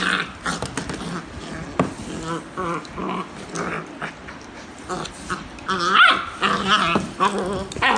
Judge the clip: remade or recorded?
recorded